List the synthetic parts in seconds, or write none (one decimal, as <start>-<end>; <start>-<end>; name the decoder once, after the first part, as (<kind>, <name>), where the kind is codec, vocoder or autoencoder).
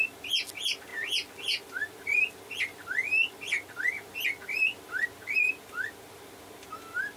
none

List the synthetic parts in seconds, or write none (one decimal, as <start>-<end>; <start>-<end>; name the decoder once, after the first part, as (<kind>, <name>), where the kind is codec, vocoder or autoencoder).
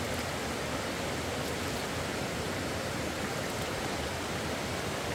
2.1-3.1 (vocoder, BigVGAN v2)